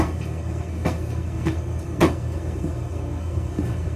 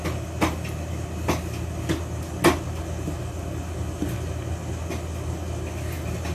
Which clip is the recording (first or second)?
second